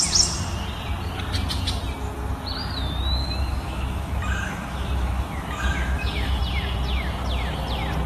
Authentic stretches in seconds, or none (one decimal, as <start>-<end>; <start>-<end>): 0.0-3.2; 6.4-8.1